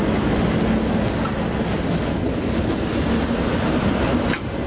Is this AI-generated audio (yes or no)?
no